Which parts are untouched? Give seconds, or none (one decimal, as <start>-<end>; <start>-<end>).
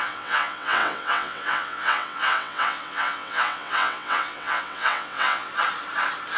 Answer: 5.5-6.4